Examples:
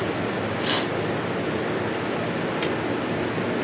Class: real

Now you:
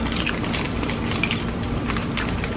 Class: real